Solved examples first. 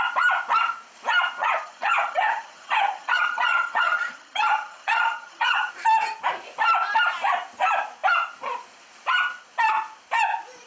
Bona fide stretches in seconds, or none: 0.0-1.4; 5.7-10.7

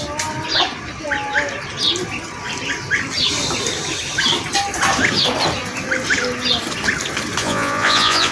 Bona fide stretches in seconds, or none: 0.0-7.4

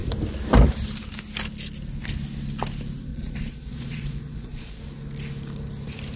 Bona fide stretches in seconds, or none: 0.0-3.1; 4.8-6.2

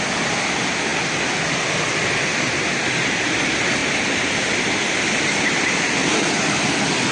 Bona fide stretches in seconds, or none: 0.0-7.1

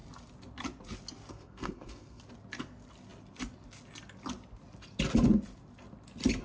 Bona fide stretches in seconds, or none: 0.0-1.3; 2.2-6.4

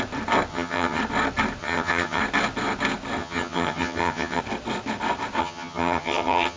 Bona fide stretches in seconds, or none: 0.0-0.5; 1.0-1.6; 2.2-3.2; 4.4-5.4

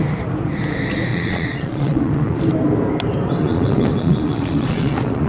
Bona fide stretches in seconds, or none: 0.0-1.1; 2.4-3.4